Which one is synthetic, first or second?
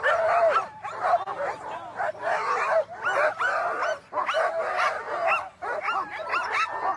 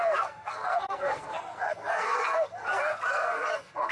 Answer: second